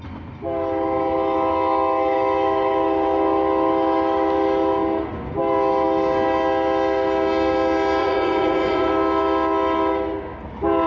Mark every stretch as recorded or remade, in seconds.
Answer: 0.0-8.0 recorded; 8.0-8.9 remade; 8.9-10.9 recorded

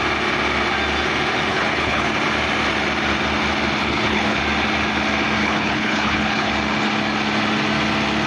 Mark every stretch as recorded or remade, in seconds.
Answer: 0.0-1.5 recorded; 1.5-2.1 remade; 2.1-3.8 recorded; 3.8-4.4 remade; 4.4-5.4 recorded; 5.4-6.5 remade; 6.5-8.3 recorded

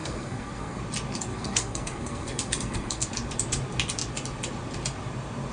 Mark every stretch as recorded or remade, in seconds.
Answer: 0.0-0.8 remade; 0.8-1.3 recorded; 1.3-3.1 remade; 3.1-5.5 recorded

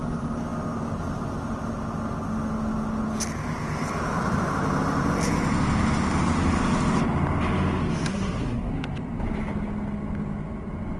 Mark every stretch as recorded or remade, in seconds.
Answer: 0.0-8.1 recorded; 8.1-8.7 remade; 8.7-11.0 recorded